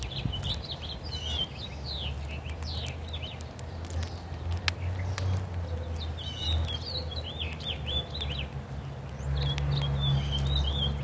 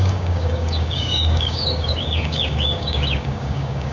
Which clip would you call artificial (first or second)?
second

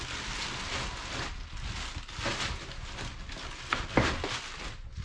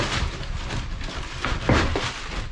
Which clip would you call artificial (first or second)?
second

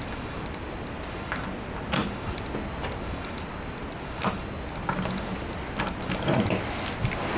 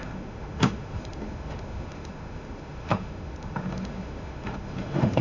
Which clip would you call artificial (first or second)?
second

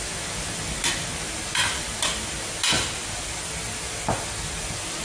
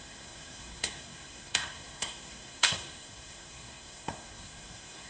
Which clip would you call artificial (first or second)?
second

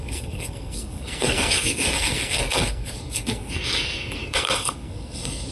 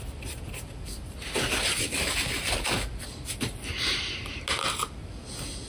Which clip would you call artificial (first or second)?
first